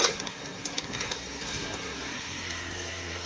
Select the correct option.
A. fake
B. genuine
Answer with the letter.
A